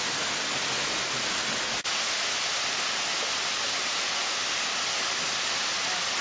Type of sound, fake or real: real